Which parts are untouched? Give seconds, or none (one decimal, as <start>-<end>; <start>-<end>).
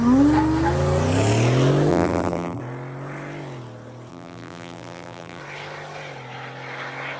0.0-1.9; 2.6-4.1; 5.4-7.2